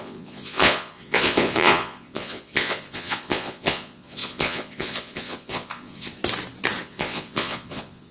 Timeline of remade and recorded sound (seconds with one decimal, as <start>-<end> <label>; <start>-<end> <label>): 0.0-6.2 remade; 6.2-6.8 recorded; 6.8-8.1 remade